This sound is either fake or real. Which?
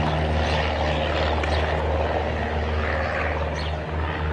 real